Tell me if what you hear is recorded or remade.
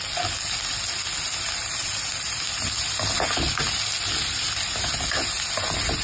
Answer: recorded